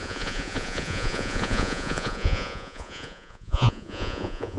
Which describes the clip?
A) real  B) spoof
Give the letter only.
B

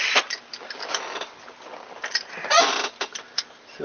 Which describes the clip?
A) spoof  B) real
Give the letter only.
A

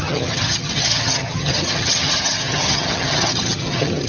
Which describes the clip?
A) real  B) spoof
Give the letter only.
B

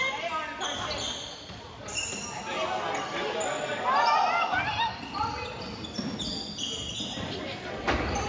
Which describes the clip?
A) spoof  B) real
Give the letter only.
B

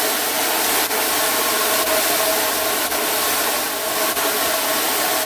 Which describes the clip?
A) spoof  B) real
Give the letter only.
B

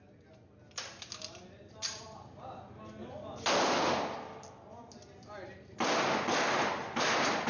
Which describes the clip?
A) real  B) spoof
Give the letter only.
A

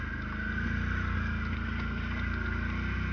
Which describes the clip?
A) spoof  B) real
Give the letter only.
B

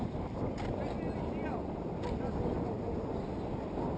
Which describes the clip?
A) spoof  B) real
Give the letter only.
B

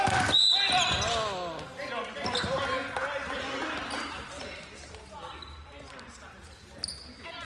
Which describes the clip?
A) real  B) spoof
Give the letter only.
A